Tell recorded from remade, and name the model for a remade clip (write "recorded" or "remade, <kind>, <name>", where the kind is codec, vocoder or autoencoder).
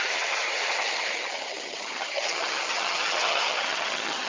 remade, vocoder, HiFi-GAN